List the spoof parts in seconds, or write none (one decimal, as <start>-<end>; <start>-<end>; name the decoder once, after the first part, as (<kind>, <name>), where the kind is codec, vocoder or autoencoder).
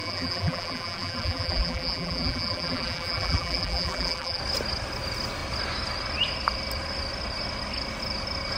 0.0-4.4 (vocoder, BigVGAN v2)